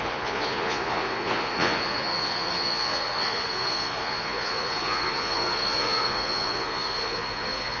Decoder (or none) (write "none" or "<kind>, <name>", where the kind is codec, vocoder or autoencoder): vocoder, Vocos